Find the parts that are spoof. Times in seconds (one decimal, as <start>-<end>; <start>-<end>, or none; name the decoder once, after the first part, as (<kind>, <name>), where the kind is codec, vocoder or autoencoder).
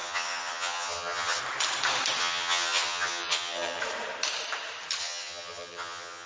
0.0-1.4 (vocoder, HiFi-GAN); 2.2-3.8; 5.0-6.3